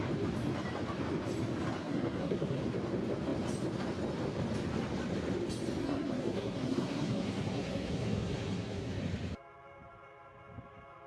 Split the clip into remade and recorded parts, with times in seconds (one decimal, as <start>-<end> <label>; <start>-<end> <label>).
0.0-1.8 recorded; 1.8-2.6 remade; 2.6-5.8 recorded; 5.8-9.0 remade; 9.0-11.1 recorded